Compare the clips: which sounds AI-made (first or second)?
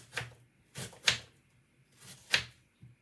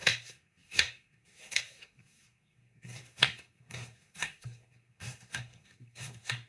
second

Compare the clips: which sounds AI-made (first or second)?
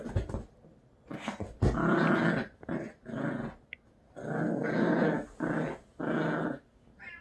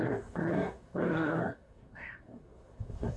second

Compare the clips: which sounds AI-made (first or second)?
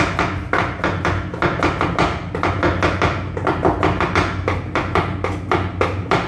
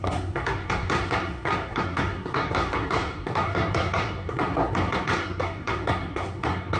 second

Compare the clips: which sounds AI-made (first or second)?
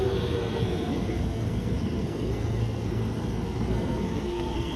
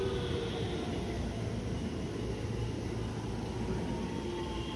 first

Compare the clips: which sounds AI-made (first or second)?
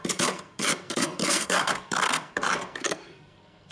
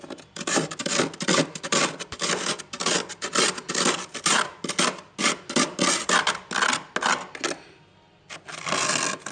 first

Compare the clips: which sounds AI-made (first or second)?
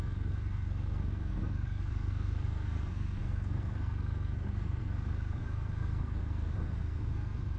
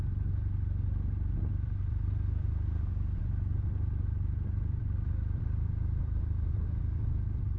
first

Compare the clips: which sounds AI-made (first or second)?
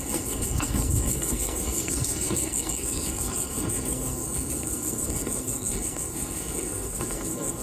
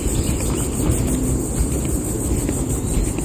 first